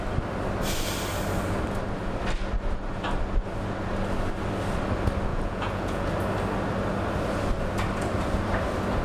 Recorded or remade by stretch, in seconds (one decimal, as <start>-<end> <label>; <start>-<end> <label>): 0.0-5.3 recorded; 5.3-6.1 remade; 6.1-9.0 recorded